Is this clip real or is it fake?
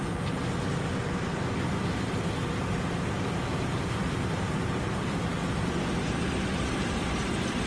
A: real